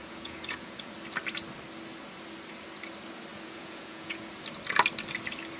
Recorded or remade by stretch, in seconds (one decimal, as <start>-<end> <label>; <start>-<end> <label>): 0.0-0.9 remade; 0.9-3.3 recorded; 3.3-4.3 remade; 4.3-5.6 recorded